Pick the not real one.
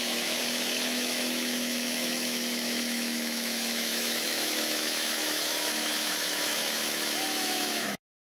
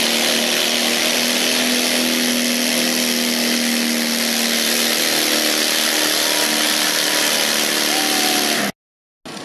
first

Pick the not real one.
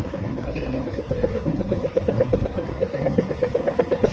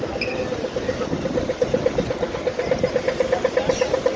first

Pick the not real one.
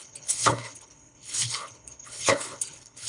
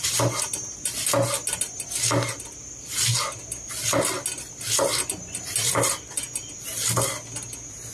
first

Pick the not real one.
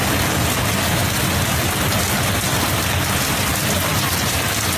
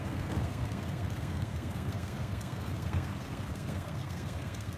second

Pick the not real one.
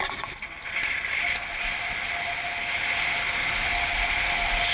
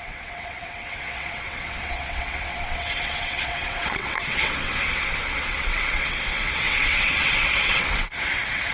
second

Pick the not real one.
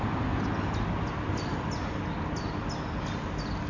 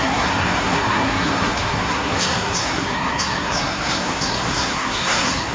second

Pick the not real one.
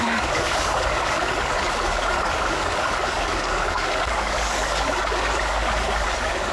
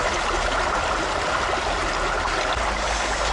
first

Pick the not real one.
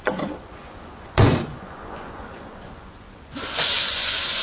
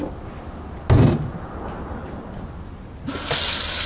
first